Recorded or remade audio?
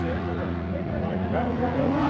remade